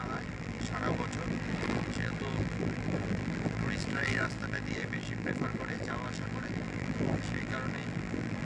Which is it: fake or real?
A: fake